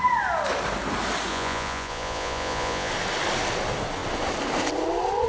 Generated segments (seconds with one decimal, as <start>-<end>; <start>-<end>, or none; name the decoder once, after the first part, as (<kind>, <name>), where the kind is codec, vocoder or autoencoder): 1.3-2.9 (vocoder, Vocos)